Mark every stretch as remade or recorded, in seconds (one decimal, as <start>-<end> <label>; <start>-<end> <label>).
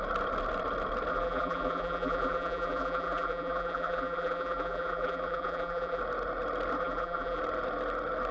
0.0-1.1 recorded; 1.1-6.0 remade; 6.0-6.8 recorded; 6.8-7.4 remade; 7.4-8.3 recorded